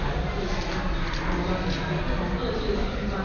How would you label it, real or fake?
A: real